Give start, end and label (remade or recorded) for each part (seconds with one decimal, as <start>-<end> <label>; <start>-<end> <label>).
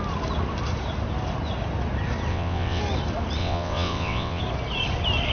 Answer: 0.0-2.3 recorded; 2.3-2.8 remade; 2.8-3.4 recorded; 3.4-4.4 remade; 4.4-5.3 recorded